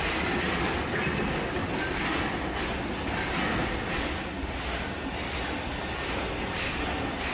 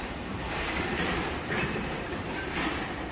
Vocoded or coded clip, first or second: second